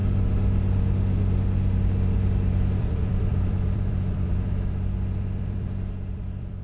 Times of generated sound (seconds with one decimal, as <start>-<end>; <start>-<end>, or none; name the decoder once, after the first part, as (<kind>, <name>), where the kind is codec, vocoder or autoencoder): 2.8-6.6 (vocoder, BigVGAN v2)